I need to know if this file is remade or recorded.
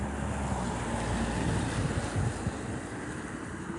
recorded